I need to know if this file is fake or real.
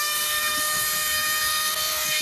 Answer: fake